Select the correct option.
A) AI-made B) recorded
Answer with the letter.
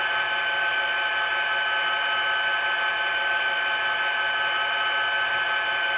B